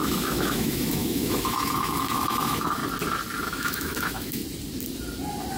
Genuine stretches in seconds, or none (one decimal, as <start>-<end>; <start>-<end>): 2.8-3.4; 4.4-5.6